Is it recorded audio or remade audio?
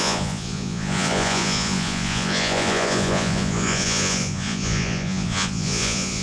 remade